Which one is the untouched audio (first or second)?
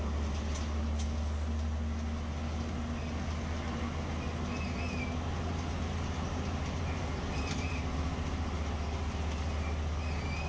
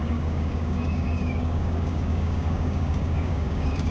first